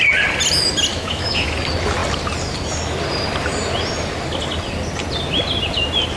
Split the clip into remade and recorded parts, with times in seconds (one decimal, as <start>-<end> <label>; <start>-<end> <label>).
0.0-0.9 recorded; 0.9-1.5 remade; 1.5-6.2 recorded